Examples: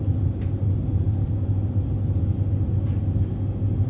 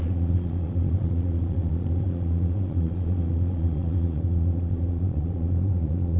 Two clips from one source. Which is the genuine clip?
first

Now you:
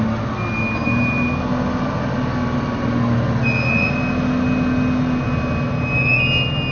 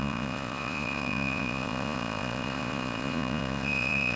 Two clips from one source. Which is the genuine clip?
first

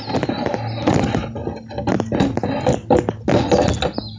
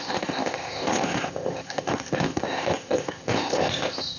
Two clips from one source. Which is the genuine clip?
first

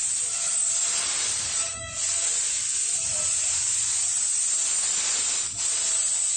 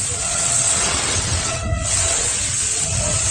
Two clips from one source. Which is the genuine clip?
first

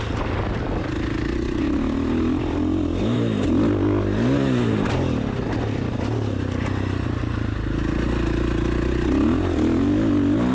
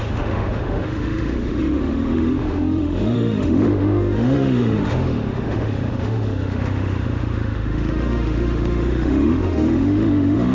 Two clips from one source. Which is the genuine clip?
first